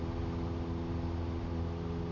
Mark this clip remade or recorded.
recorded